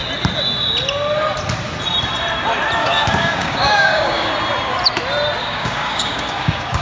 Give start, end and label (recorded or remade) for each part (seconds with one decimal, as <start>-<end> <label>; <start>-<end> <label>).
0.0-2.8 recorded; 2.8-4.3 remade; 4.3-5.4 recorded; 5.4-6.8 remade